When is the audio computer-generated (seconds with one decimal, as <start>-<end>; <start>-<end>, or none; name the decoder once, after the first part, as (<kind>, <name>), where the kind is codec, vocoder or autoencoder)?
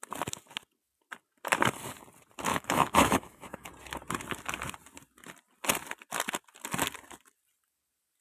2.5-3.7 (autoencoder, DAC-VAE)